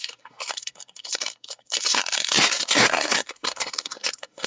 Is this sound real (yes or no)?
no